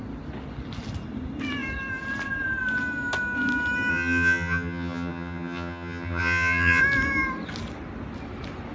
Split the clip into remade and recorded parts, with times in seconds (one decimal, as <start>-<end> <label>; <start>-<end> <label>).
0.0-3.9 recorded; 3.9-6.8 remade; 6.8-8.7 recorded